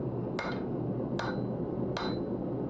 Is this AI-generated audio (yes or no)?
no